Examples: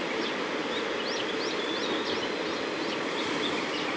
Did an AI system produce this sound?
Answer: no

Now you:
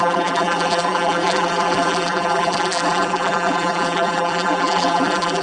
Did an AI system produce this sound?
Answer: yes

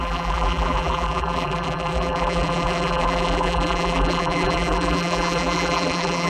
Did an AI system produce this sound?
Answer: yes